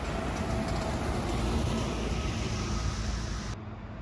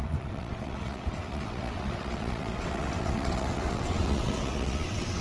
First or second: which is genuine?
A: first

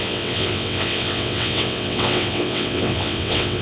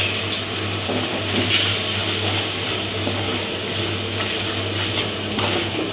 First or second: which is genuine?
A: second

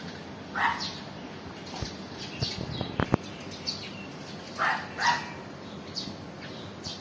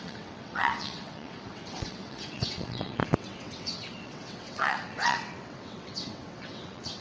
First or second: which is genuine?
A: first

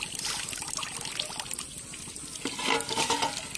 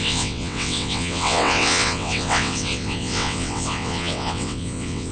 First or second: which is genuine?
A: first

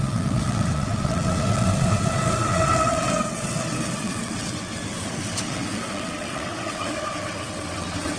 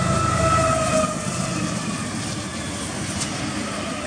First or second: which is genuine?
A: second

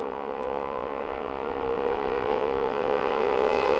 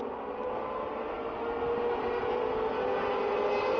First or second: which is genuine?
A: second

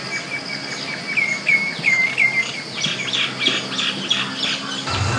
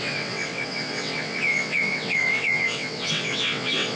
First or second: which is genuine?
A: first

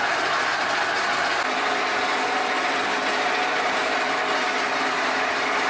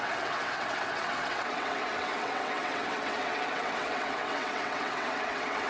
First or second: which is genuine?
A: first